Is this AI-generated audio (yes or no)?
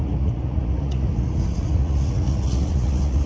yes